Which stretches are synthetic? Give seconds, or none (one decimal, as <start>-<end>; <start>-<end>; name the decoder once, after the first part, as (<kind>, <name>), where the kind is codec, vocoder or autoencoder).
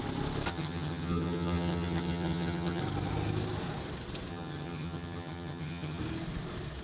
0.5-2.8 (vocoder, HiFi-GAN); 4.3-6.0